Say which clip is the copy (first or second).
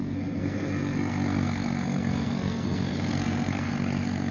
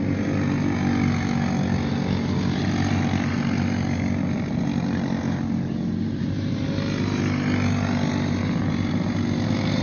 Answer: first